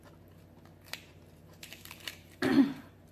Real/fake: fake